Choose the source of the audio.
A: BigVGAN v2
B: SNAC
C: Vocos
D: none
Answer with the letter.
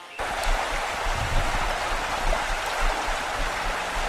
D